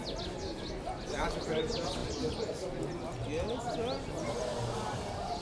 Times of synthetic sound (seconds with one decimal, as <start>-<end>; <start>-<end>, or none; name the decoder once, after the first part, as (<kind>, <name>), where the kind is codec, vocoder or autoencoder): none

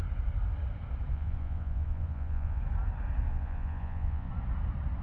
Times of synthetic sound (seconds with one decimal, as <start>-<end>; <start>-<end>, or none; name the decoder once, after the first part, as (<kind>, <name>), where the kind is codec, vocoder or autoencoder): 1.1-2.6 (vocoder, Vocos); 3.3-4.3